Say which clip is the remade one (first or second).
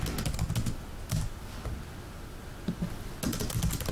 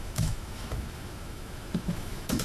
second